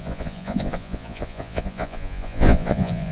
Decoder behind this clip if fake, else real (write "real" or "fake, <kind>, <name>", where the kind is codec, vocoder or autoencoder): fake, vocoder, Vocos